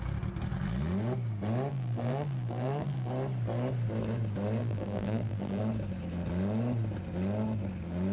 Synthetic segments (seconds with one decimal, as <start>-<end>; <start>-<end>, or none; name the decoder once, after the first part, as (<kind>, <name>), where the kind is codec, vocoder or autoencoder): 1.7-3.1 (vocoder, BigVGAN v2); 4.6-5.6